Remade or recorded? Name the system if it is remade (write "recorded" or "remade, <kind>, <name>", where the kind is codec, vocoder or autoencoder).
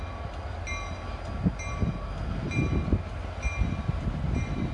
recorded